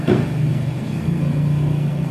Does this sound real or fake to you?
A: fake